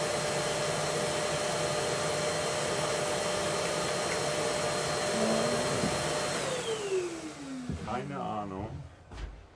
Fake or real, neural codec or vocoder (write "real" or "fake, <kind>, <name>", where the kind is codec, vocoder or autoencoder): real